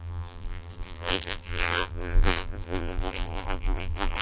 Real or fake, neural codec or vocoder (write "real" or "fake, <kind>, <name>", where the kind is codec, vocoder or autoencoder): fake, vocoder, BigVGAN v2